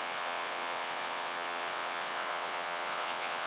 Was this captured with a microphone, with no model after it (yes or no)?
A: no